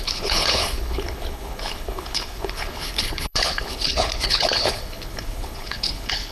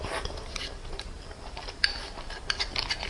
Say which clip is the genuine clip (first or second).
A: second